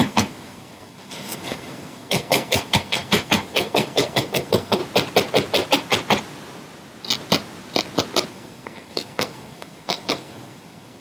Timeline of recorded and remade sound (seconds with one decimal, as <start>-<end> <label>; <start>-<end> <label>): 0.0-4.8 remade; 4.8-8.3 recorded; 8.3-11.0 remade